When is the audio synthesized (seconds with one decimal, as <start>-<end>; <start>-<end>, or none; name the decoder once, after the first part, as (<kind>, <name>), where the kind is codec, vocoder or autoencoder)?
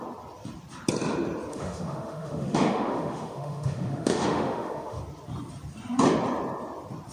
1.5-5.0 (autoencoder, DAC-VAE)